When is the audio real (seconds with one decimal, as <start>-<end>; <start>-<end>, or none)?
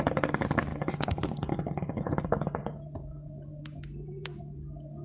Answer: 0.0-2.6; 4.6-5.0